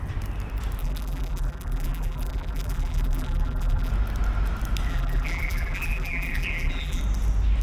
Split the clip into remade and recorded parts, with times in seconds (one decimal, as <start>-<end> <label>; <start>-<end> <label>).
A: 0.0-0.8 recorded; 0.8-3.9 remade; 3.9-4.9 recorded; 4.9-7.0 remade; 7.0-7.6 recorded